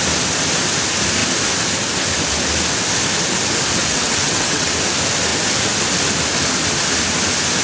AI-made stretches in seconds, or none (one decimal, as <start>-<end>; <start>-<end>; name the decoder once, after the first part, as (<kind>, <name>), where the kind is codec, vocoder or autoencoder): 3.8-4.7 (vocoder, WaveNeXt)